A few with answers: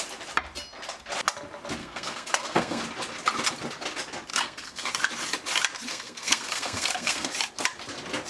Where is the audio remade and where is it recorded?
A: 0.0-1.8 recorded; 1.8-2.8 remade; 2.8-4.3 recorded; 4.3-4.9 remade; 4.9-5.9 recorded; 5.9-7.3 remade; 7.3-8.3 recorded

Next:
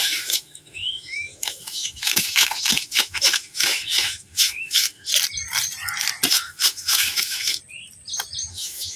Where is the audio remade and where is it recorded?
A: 0.0-5.1 remade; 5.1-6.3 recorded; 6.3-7.6 remade; 7.6-8.5 recorded; 8.5-9.0 remade